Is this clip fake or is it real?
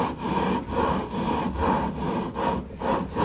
real